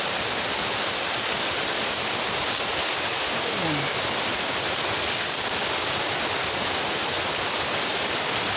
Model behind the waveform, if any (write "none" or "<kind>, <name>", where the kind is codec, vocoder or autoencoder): none